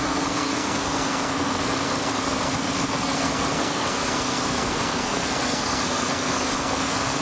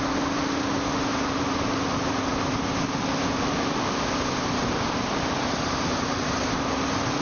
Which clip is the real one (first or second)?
second